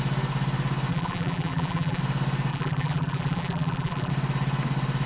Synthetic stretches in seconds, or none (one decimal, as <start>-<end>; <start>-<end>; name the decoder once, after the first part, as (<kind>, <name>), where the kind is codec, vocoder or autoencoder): 0.9-2.0 (vocoder, BigVGAN v2); 2.5-4.1